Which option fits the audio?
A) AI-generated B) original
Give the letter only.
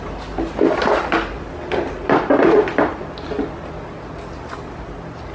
B